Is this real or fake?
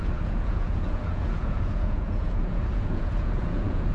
fake